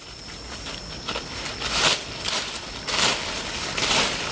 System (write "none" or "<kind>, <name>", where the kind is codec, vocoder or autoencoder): none